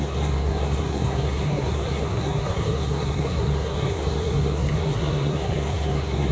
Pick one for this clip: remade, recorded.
remade